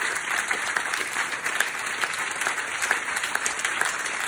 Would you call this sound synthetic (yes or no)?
yes